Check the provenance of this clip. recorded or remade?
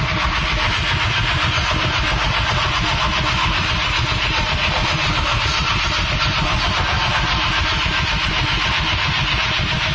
recorded